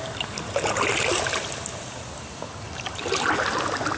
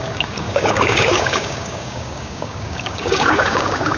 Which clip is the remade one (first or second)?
second